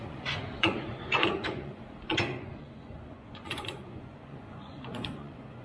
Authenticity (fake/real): fake